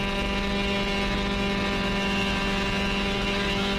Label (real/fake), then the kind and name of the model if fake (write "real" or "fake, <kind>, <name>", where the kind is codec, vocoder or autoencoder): real